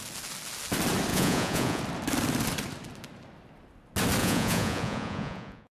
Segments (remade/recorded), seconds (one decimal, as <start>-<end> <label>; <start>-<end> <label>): 0.0-1.1 recorded; 1.1-1.8 remade; 1.8-4.2 recorded; 4.2-5.7 remade